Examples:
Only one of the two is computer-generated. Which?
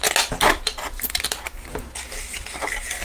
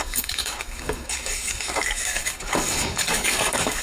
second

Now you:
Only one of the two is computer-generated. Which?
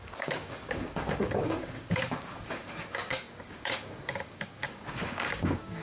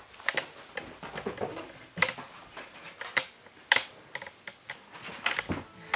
first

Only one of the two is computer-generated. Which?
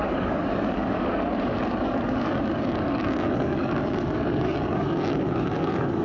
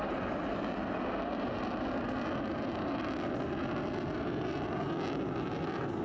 first